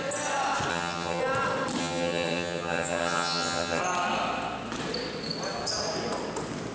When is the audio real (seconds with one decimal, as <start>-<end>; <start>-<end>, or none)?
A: 0.0-0.7; 1.2-1.8; 3.8-6.7